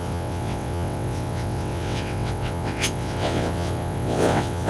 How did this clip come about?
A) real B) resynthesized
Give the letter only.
B